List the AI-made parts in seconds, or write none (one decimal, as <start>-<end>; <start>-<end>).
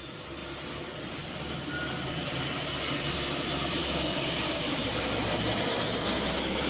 3.8-4.8